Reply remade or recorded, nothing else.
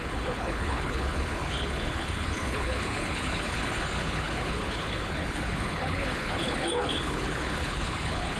remade